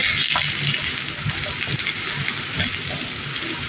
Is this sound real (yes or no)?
yes